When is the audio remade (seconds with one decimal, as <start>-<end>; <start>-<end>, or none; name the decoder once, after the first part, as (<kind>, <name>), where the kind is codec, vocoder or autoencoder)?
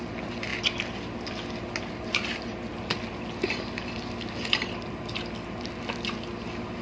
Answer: none